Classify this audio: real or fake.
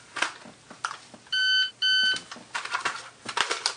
real